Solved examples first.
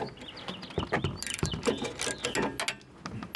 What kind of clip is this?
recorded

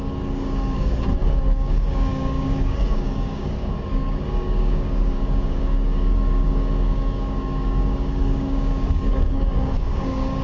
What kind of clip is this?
remade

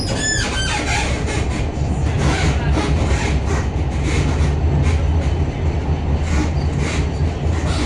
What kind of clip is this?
recorded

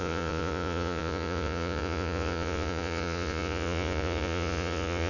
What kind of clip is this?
remade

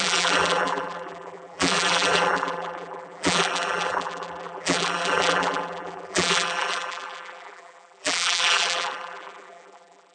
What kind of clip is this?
remade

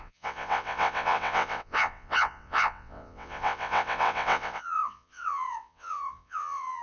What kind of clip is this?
remade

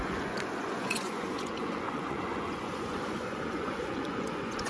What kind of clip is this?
remade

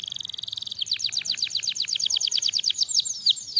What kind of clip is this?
recorded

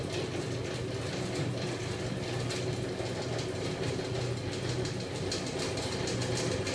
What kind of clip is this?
recorded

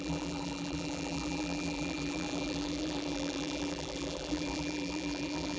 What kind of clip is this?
remade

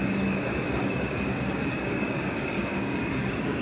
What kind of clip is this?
remade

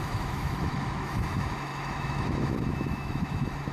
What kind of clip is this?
remade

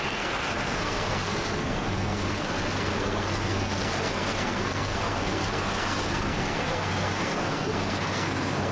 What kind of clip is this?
remade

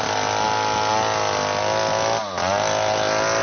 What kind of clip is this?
recorded